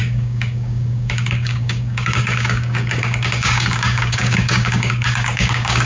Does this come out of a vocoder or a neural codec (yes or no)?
yes